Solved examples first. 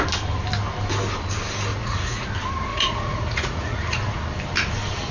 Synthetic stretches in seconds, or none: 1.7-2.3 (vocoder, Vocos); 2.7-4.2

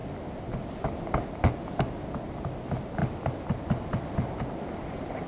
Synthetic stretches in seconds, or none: none

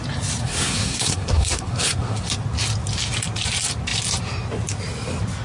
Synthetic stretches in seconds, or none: 0.4-2.2 (codec, SNAC)

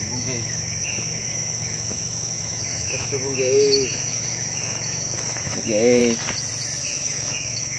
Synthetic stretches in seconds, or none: 0.0-6.0 (autoencoder, DAC-VAE); 6.8-7.8